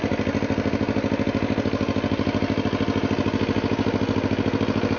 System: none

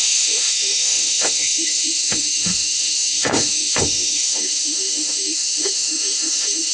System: autoencoder, DAC-VAE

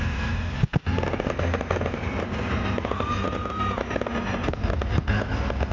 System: none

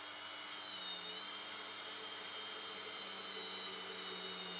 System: none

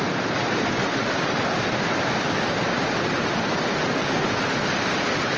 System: none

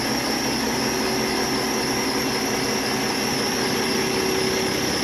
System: none